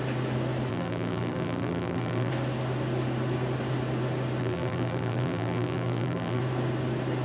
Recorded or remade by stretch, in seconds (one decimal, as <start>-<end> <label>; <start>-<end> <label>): 0.0-0.7 recorded; 0.7-2.3 remade; 2.3-4.4 recorded; 4.4-6.4 remade; 6.4-7.2 recorded

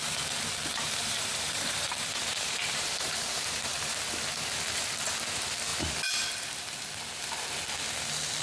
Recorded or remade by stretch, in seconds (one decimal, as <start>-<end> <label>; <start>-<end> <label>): 0.0-0.7 recorded; 0.7-3.9 remade; 3.9-8.4 recorded

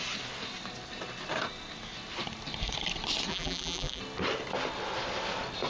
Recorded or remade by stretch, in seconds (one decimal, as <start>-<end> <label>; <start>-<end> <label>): 0.0-3.3 recorded; 3.3-4.0 remade; 4.0-5.7 recorded

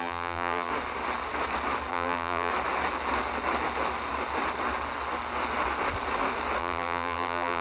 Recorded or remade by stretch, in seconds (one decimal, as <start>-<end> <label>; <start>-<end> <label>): 0.0-0.7 remade; 0.7-1.9 recorded; 1.9-2.5 remade; 2.5-6.6 recorded; 6.6-7.6 remade

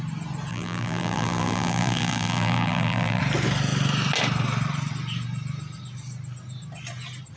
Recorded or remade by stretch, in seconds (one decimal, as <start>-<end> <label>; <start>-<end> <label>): 0.0-0.5 recorded; 0.5-3.2 remade; 3.2-7.4 recorded

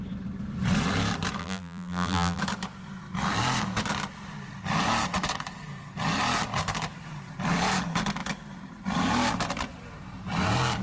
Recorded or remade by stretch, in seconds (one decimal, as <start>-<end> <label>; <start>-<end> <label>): 0.0-1.4 recorded; 1.4-2.4 remade; 2.4-10.8 recorded